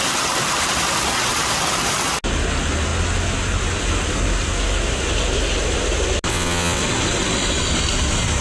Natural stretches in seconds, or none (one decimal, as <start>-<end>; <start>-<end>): 0.0-6.3; 6.8-8.4